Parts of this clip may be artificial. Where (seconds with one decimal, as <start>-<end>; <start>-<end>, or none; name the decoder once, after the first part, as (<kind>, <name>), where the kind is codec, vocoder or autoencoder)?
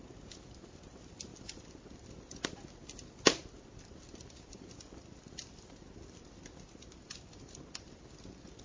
1.3-2.6 (vocoder, BigVGAN v2); 3.4-8.6